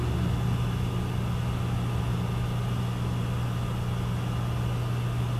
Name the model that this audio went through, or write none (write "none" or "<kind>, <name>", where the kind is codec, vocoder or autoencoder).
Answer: none